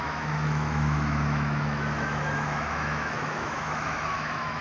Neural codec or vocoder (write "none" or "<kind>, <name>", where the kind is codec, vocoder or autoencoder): autoencoder, DAC-VAE